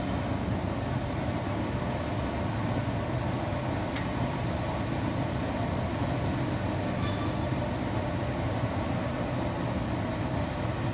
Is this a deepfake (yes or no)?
no